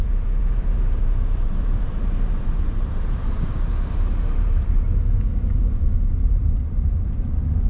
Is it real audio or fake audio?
fake